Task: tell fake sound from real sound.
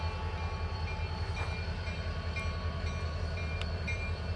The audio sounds real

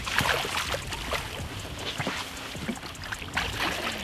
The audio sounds real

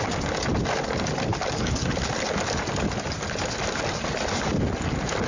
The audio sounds real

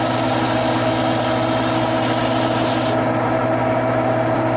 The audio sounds real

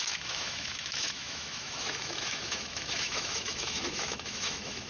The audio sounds fake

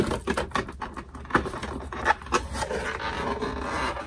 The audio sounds real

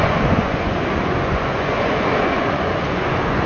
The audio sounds fake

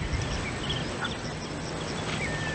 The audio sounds real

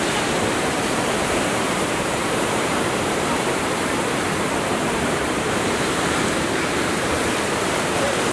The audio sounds fake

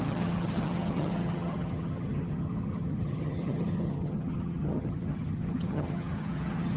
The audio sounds fake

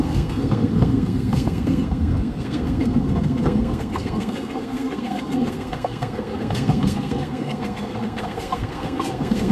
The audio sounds fake